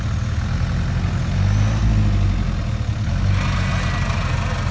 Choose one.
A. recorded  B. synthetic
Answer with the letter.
A